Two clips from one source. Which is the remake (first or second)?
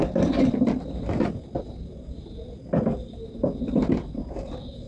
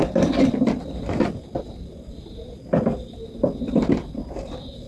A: second